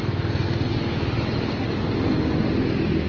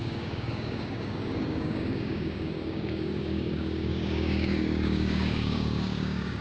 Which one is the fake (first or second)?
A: second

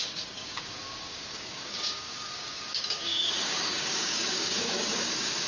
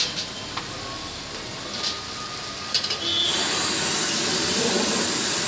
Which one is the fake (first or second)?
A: first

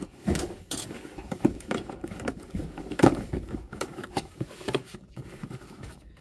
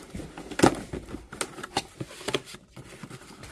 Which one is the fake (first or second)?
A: first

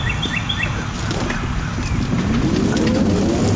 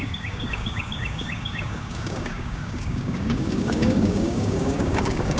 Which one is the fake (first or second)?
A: second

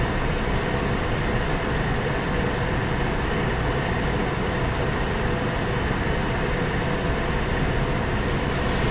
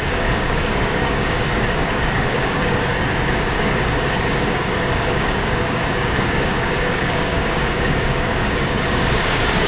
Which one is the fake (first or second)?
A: second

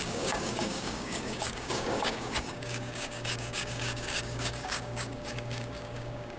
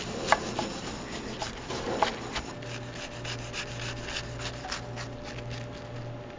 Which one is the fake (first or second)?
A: first